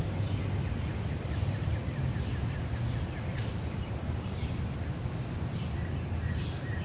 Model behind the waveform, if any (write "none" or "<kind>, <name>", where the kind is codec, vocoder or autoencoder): none